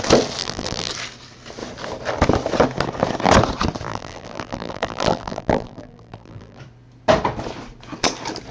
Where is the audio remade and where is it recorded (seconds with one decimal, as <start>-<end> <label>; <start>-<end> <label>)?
0.0-0.4 recorded; 0.4-0.9 remade; 0.9-3.9 recorded; 3.9-6.6 remade; 6.6-8.5 recorded

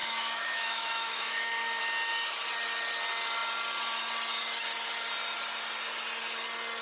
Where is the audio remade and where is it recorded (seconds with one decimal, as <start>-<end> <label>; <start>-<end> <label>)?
0.0-1.8 remade; 1.8-6.8 recorded

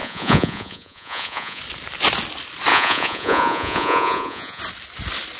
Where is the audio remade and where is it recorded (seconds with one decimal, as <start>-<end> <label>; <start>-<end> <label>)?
0.0-1.6 remade; 1.6-2.7 recorded; 2.7-4.6 remade; 4.6-5.4 recorded

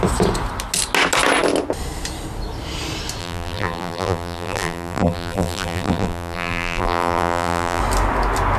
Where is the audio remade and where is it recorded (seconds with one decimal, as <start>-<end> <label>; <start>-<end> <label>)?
0.0-3.2 recorded; 3.2-7.8 remade; 7.8-8.6 recorded

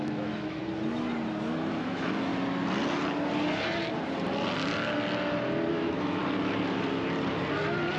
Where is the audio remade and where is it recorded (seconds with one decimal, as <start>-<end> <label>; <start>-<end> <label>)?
0.0-0.6 remade; 0.6-1.7 recorded; 1.7-2.3 remade; 2.3-5.7 recorded; 5.7-6.2 remade; 6.2-8.0 recorded

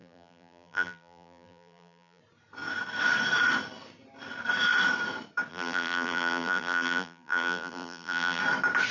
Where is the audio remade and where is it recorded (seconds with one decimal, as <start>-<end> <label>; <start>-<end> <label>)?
0.0-2.2 remade; 2.2-5.5 recorded; 5.5-8.4 remade; 8.4-8.9 recorded